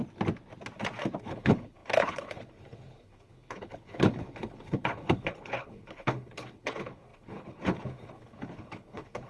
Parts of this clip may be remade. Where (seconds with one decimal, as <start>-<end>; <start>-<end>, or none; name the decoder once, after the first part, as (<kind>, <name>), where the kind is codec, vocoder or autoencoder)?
1.2-9.3 (codec, HILCodec)